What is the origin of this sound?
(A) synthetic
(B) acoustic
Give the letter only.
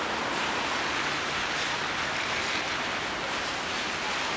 B